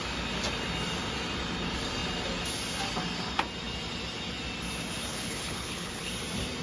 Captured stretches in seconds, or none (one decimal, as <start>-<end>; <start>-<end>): 0.0-5.1; 6.1-6.6